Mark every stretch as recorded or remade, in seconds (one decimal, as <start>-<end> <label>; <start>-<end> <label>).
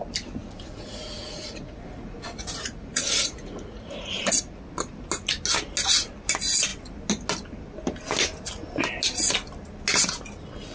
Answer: 0.0-0.4 recorded; 0.4-4.3 remade; 4.3-10.7 recorded